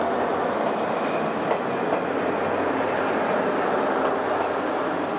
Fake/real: real